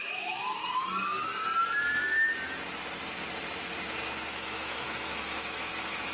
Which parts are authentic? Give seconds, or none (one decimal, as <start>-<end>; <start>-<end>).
0.6-4.3